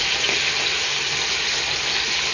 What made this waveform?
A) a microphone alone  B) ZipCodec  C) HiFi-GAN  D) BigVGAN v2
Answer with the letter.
A